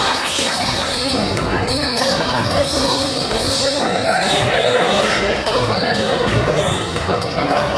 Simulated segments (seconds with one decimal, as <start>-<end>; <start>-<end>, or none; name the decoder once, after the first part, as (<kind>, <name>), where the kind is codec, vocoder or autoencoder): 0.0-7.8 (codec, SNAC)